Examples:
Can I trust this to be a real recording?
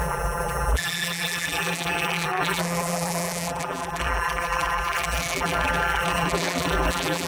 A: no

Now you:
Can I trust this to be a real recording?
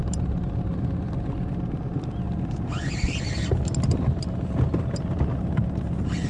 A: yes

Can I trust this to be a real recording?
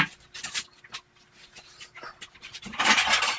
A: yes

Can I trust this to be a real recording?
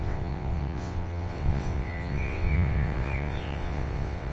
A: no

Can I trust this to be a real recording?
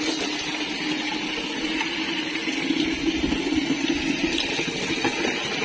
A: yes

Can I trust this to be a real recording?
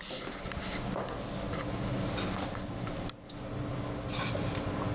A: yes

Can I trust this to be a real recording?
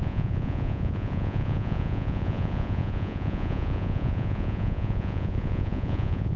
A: no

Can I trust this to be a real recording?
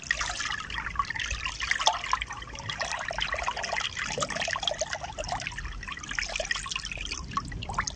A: yes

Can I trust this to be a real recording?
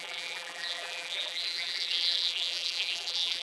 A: no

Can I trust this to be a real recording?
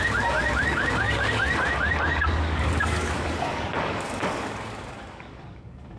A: no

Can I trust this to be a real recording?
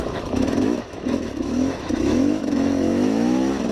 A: no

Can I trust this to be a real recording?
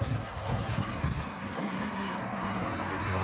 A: no